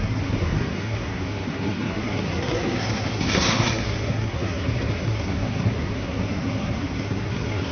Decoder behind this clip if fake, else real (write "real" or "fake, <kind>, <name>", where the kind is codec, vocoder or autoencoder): fake, codec, SNAC